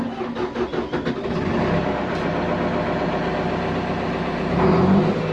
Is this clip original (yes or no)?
yes